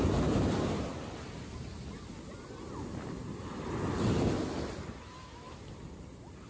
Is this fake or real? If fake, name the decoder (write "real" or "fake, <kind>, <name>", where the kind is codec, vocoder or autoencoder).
real